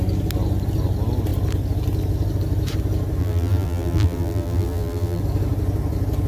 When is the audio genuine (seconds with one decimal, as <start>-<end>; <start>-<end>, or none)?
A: 0.0-3.2; 5.2-6.3

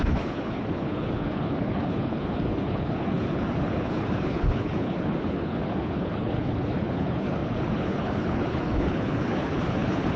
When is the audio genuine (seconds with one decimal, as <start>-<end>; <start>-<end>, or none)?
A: none